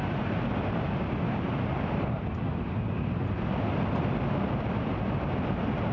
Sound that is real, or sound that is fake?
real